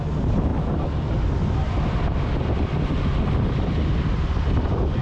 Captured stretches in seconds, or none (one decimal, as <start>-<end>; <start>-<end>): 0.0-5.0